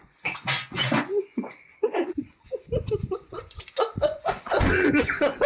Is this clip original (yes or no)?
no